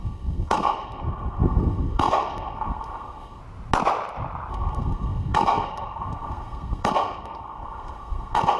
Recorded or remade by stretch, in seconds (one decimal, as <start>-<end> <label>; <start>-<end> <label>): 0.0-3.4 remade; 3.4-4.5 recorded; 4.5-8.6 remade